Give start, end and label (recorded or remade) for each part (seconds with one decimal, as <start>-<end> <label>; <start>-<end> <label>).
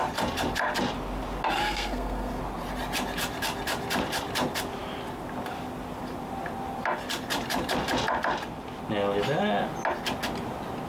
0.0-1.6 recorded; 1.6-2.4 remade; 2.4-10.9 recorded